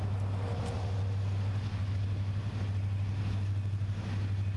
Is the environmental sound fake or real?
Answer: real